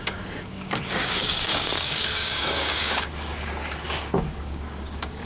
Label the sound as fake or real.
fake